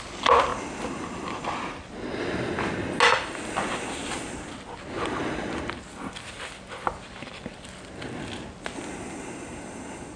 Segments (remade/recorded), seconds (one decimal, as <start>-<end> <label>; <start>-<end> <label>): 0.0-10.2 recorded